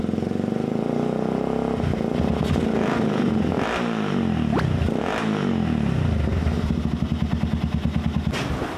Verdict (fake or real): real